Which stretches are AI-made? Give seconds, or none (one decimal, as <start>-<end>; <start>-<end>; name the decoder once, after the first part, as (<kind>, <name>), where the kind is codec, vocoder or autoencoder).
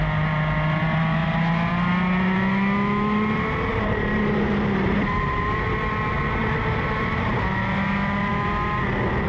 3.7-5.7 (vocoder, BigVGAN v2); 6.4-7.2